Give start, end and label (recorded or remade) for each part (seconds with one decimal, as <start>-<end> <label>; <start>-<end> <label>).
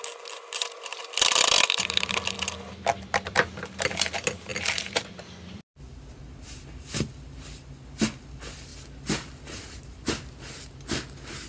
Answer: 0.0-0.9 recorded; 0.9-2.1 remade; 2.1-4.5 recorded; 4.5-6.2 remade; 6.2-8.7 recorded; 8.7-10.6 remade; 10.6-11.5 recorded